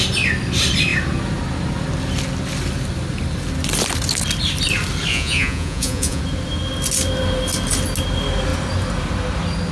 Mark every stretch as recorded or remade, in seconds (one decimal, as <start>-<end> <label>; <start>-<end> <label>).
0.0-5.1 recorded; 5.1-6.2 remade; 6.2-9.7 recorded